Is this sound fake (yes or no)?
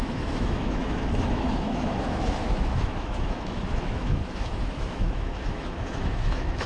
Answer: yes